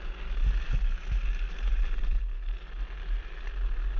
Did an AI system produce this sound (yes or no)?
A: no